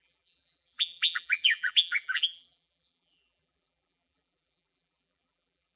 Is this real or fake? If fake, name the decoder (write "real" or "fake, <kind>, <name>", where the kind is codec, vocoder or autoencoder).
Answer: fake, vocoder, BigVGAN v2